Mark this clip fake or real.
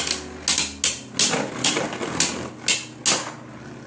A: real